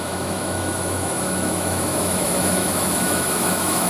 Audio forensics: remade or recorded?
remade